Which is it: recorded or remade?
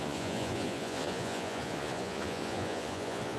remade